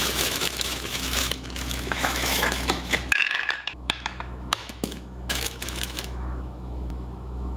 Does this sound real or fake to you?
fake